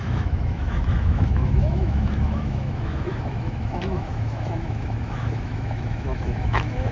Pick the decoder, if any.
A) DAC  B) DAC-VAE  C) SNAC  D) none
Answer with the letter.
B